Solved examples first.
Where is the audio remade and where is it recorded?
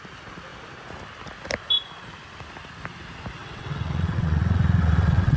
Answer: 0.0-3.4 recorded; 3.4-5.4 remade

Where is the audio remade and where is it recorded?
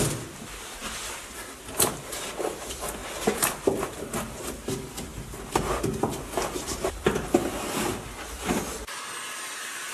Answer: 0.0-3.0 recorded; 3.0-4.1 remade; 4.1-9.9 recorded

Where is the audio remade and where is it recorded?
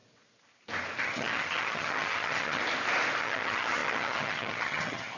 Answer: 0.0-1.0 recorded; 1.0-2.6 remade; 2.6-3.2 recorded; 3.2-5.2 remade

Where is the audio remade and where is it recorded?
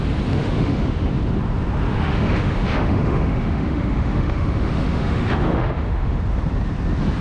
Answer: 0.0-0.4 recorded; 0.4-1.1 remade; 1.1-1.9 recorded; 1.9-6.2 remade; 6.2-7.2 recorded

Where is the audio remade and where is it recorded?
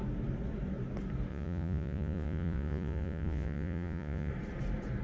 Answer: 0.0-1.3 recorded; 1.3-4.3 remade; 4.3-5.0 recorded